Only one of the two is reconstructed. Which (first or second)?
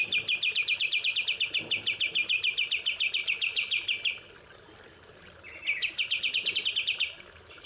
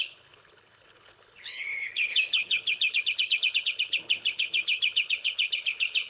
second